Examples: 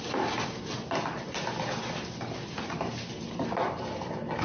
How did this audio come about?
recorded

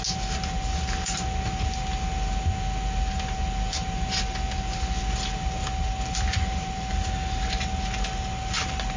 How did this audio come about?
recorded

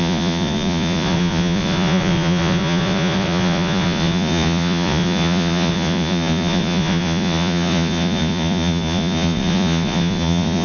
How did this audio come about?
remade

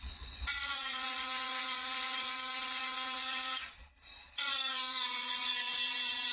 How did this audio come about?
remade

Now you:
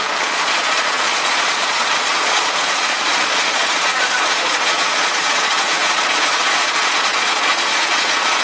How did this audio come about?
remade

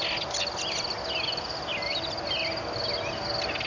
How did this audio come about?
recorded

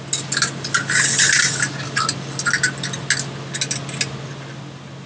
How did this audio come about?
recorded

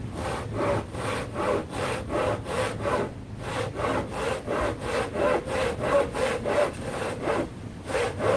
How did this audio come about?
recorded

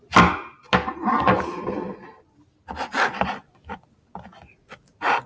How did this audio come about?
recorded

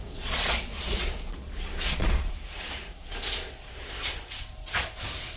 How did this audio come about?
remade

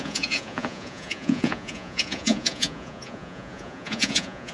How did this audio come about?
remade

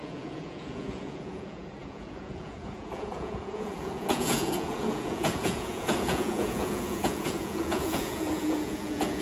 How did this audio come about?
remade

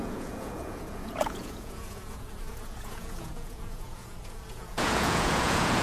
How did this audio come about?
remade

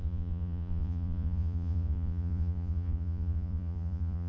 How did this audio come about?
remade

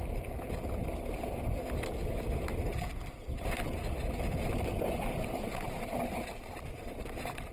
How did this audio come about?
recorded